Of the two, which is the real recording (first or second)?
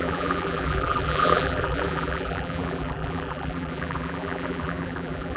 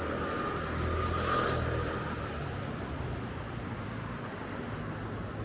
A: second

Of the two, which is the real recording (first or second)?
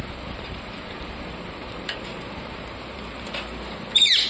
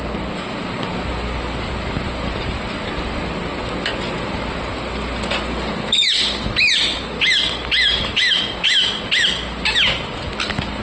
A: second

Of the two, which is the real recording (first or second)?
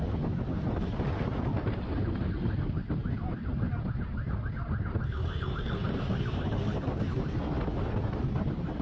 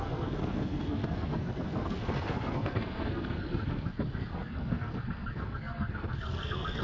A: first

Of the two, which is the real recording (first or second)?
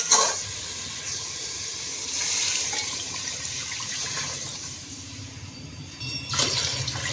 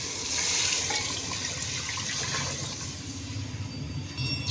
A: second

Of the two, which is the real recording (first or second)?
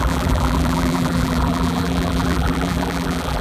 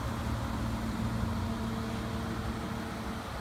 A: second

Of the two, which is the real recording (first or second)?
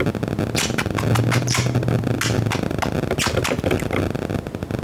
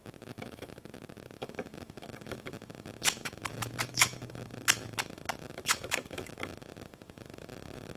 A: first